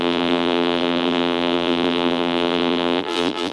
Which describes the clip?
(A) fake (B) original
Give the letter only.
A